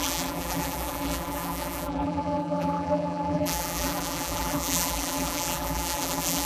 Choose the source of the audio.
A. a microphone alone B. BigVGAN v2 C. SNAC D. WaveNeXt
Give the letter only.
B